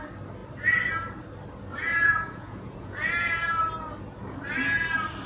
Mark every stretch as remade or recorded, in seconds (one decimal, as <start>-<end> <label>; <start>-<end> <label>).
0.0-1.7 recorded; 1.7-3.1 remade; 3.1-5.3 recorded